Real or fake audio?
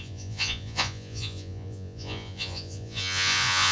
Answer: fake